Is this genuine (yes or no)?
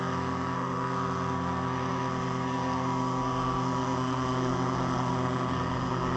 no